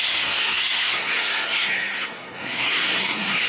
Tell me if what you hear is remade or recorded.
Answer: remade